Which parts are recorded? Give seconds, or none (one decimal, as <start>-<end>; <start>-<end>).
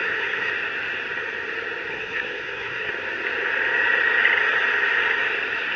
0.5-1.9; 2.9-5.8